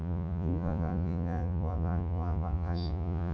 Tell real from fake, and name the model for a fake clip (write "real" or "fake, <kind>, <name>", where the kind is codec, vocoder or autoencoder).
fake, vocoder, Vocos